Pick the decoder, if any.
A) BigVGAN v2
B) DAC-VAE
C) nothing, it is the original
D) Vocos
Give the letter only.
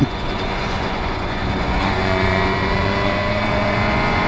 D